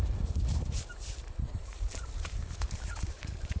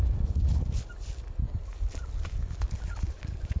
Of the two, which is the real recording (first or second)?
second